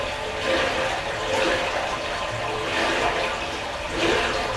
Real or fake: real